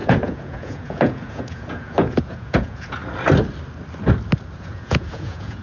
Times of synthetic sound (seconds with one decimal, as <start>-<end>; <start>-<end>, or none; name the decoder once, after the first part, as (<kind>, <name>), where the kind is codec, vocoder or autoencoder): 0.0-3.0 (vocoder, Vocos); 4.6-5.6